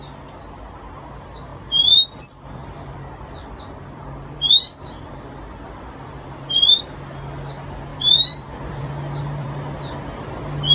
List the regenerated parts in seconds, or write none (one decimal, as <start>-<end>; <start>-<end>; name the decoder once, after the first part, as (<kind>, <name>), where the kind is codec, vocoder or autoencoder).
1.5-6.8 (vocoder, BigVGAN v2); 7.9-9.5